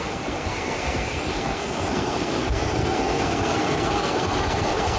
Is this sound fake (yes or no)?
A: yes